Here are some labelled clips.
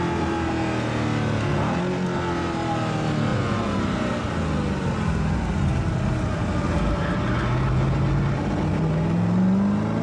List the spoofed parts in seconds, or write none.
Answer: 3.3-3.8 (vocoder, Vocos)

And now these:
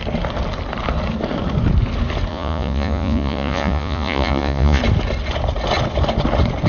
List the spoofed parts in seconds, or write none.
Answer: 2.3-4.8 (vocoder, Vocos)

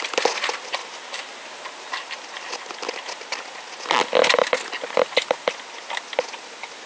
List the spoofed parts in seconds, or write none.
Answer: none

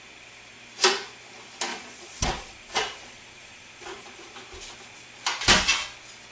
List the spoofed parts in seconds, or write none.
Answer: 1.7-4.3 (vocoder, Vocos)

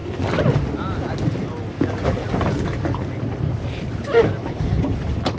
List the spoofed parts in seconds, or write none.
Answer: none

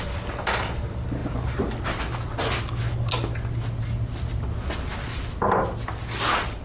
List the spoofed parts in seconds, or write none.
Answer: none

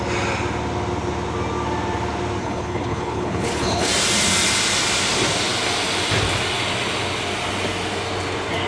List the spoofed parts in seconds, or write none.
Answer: 2.4-3.9 (codec, HILCodec)